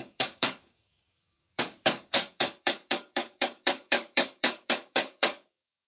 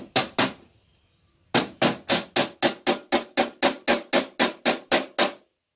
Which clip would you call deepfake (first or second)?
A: first